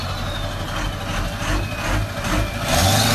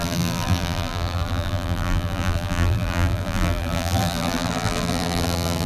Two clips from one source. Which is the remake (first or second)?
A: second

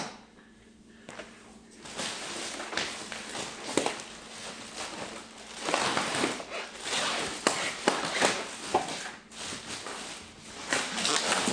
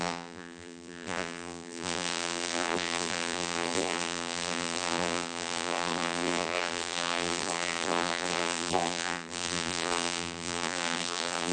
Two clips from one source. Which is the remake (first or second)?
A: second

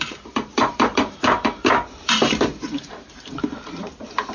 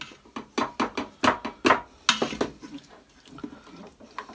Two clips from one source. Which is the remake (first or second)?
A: first